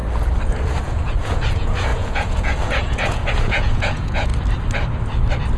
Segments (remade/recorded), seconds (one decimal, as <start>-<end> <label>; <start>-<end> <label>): 0.0-0.8 recorded; 0.8-4.3 remade; 4.3-5.6 recorded